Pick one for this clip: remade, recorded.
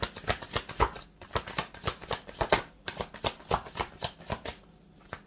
recorded